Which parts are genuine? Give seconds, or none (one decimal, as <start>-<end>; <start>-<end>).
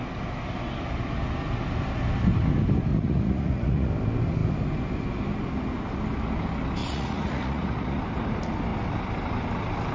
0.0-2.9; 3.9-6.8; 8.0-9.9